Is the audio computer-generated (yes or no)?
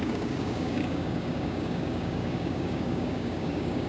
yes